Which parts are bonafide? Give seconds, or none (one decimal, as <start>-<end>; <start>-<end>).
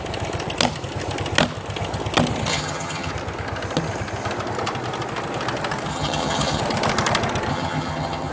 0.0-2.5; 3.1-5.9; 6.6-7.5